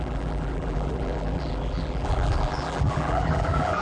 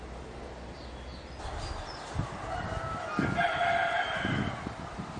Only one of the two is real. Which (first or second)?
second